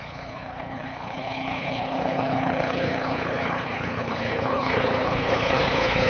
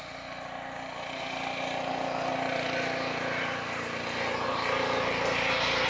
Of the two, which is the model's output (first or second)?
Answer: first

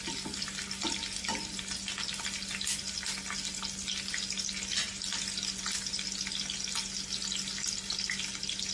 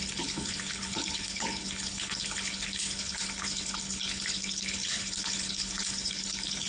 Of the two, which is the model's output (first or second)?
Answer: second